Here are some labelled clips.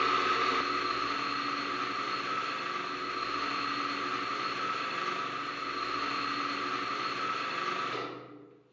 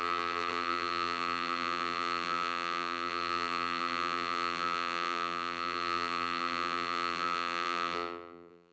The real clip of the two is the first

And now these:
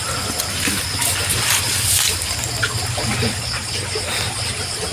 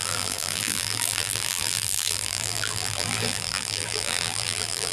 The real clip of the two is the first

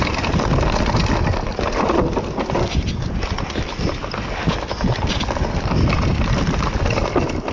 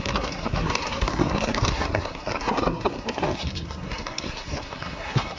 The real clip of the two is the first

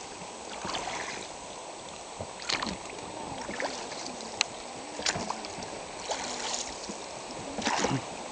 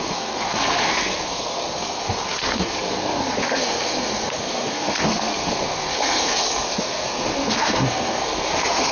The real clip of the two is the first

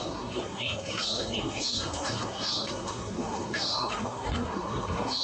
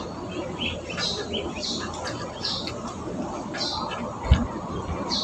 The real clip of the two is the second